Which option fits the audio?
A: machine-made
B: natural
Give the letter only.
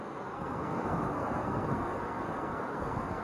A